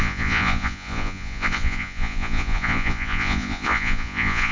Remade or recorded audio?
remade